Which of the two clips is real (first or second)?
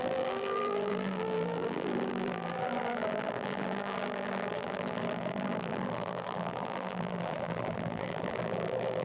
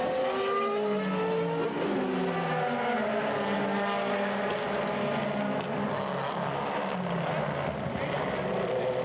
second